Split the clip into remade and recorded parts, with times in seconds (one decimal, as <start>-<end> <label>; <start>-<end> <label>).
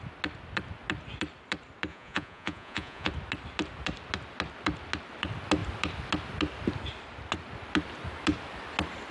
0.0-1.9 recorded; 1.9-3.1 remade; 3.1-9.1 recorded